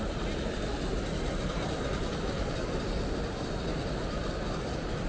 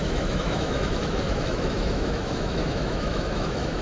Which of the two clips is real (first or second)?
first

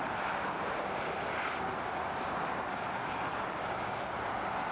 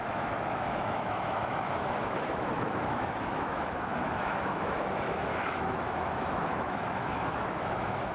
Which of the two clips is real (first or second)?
first